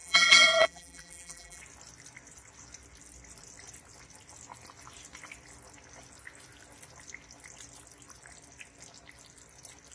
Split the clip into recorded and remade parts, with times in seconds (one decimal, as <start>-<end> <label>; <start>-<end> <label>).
0.0-1.6 remade; 1.6-9.9 recorded